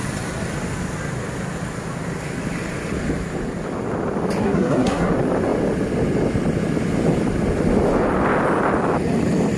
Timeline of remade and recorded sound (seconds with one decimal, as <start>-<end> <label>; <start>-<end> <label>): 0.0-4.4 recorded; 4.4-5.1 remade; 5.1-9.6 recorded